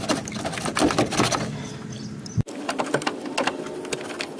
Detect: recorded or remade recorded